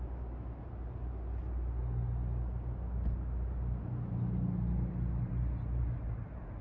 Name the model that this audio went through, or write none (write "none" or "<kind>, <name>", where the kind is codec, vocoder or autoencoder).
none